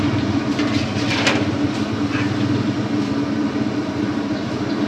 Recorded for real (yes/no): yes